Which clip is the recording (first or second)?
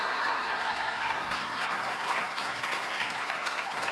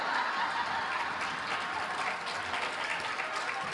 second